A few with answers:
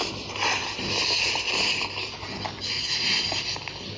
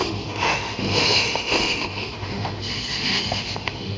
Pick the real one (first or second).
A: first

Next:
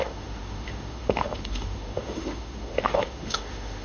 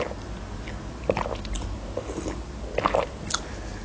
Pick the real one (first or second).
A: second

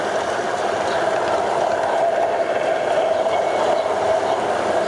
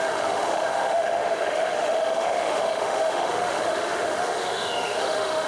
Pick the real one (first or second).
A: first